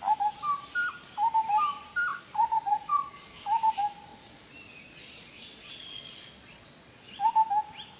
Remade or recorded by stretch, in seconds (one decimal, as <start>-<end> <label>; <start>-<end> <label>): 0.0-2.1 recorded; 2.1-3.2 remade; 3.2-4.1 recorded; 4.1-7.2 remade; 7.2-8.0 recorded